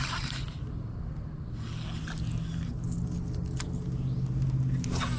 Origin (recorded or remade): recorded